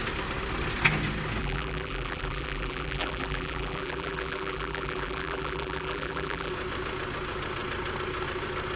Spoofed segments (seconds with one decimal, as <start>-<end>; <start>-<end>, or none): 1.4-6.5